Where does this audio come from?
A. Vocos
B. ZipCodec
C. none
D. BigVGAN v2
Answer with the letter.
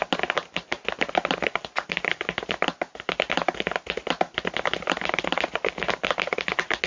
C